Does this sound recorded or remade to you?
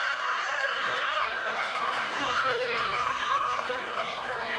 remade